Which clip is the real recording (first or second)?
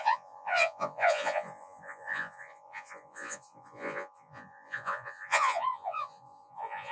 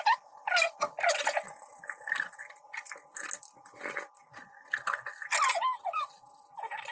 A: second